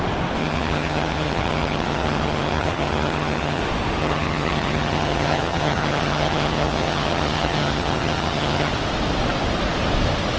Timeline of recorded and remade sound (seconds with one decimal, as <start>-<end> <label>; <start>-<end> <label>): 0.0-0.4 recorded; 0.4-3.6 remade; 3.6-4.0 recorded; 4.0-8.7 remade; 8.7-10.4 recorded